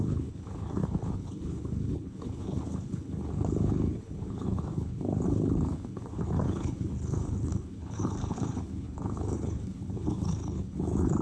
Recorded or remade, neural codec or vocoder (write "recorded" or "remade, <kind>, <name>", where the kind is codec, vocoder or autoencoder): remade, codec, HILCodec